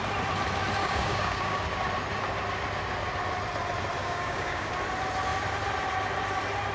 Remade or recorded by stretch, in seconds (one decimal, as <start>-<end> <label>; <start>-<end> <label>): 0.0-0.8 recorded; 0.8-1.6 remade; 1.6-4.0 recorded; 4.0-4.7 remade; 4.7-6.7 recorded